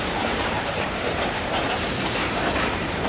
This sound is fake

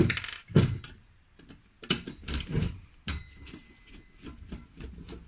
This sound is real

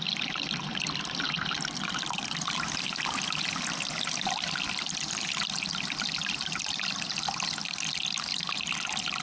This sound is real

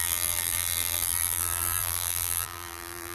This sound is fake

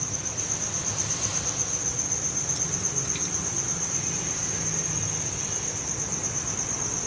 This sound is real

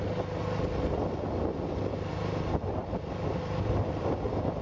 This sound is real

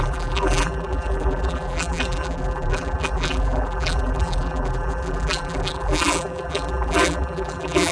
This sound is fake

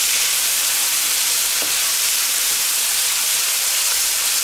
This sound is fake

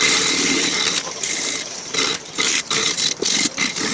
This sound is fake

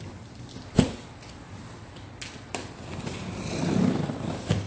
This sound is real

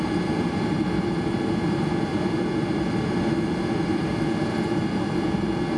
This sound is fake